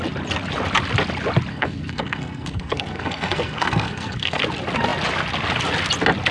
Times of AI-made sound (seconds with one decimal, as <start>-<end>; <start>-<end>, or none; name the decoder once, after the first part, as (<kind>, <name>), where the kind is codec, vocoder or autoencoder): 1.5-4.4 (codec, SNAC)

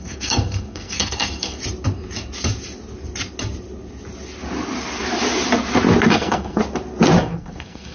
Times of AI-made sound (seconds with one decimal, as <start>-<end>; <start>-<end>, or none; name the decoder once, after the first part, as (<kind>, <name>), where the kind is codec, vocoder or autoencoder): 0.0-1.6 (codec, SNAC); 6.1-6.6; 7.2-7.9